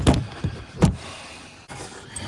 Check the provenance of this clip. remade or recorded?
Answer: recorded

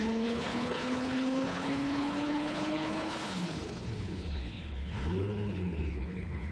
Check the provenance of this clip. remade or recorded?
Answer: remade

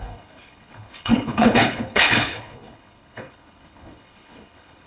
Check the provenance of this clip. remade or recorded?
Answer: remade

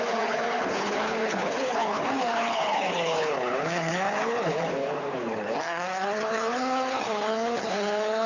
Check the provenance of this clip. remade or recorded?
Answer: remade